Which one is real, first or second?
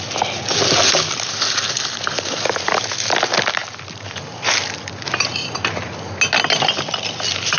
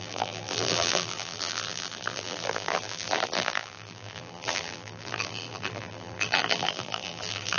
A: first